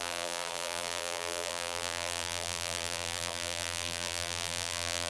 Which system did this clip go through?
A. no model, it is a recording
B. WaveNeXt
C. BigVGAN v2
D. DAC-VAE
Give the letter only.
C